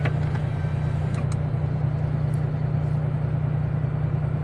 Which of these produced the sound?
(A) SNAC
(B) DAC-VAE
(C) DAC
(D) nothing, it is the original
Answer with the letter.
D